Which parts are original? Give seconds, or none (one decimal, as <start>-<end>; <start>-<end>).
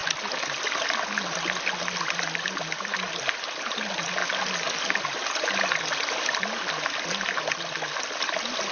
0.0-8.7